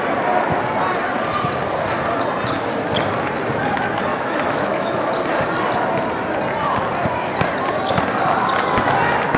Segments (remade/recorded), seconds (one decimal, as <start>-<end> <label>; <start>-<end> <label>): 0.0-4.1 recorded; 4.1-5.1 remade; 5.1-9.4 recorded